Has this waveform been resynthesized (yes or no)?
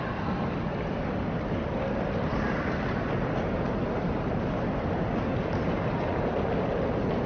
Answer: no